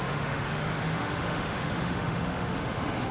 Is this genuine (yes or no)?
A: no